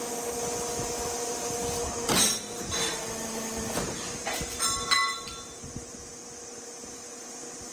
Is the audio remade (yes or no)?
no